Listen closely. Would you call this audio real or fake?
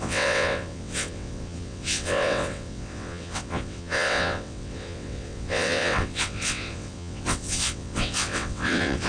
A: fake